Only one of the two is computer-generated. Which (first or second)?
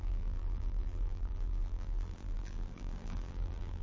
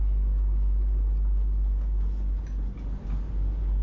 first